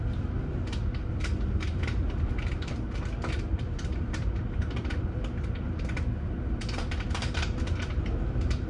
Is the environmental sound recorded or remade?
recorded